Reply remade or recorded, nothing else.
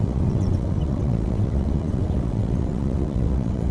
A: remade